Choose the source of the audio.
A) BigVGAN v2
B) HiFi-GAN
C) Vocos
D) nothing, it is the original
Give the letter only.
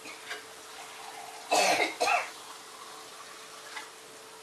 D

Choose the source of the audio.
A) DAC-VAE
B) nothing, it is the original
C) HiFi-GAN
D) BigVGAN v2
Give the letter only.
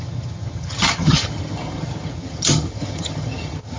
C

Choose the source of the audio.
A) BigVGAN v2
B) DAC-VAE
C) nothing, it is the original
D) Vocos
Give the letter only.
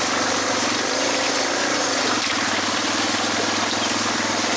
C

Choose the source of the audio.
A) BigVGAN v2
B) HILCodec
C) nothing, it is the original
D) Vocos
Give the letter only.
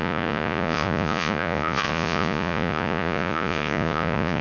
D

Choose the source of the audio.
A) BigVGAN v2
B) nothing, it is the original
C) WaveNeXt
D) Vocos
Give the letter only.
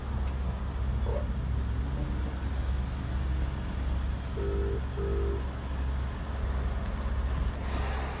B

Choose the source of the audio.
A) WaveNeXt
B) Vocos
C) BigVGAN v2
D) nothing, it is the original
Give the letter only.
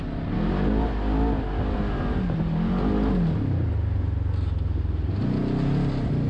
D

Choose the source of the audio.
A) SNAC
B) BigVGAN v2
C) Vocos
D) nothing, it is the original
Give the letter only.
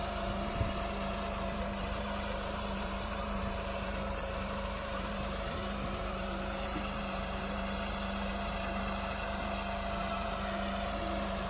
B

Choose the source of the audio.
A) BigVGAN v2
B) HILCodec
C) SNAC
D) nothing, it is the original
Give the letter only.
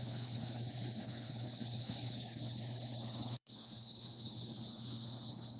B